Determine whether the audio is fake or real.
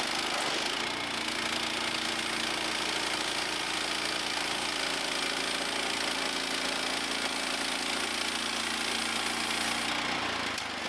real